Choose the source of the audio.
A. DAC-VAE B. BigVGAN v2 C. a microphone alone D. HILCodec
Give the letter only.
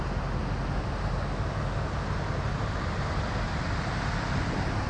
C